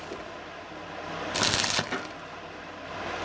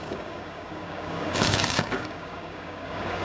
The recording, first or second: first